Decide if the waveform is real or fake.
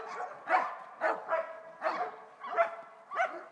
real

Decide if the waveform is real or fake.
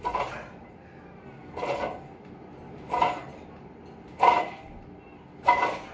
real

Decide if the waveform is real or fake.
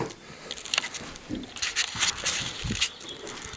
real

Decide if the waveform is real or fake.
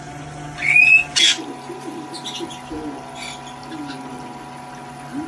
real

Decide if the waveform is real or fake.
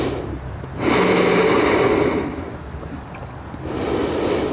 real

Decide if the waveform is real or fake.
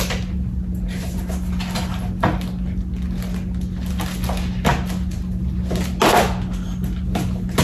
real